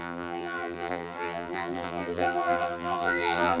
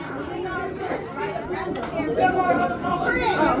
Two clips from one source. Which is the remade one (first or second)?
first